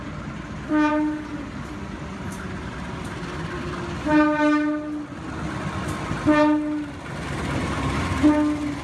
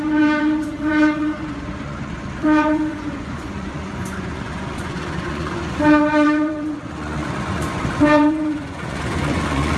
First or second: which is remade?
second